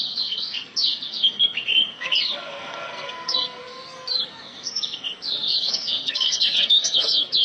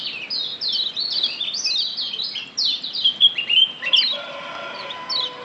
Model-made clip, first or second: first